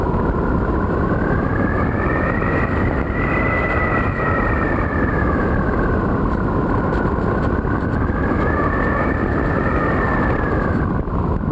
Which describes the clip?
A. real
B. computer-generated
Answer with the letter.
A